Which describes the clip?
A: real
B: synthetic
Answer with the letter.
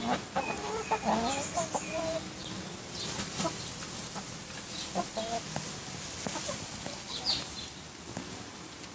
A